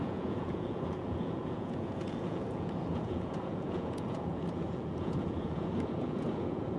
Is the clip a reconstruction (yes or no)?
yes